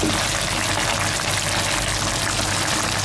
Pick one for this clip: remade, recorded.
recorded